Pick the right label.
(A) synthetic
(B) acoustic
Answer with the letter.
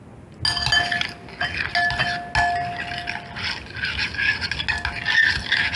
B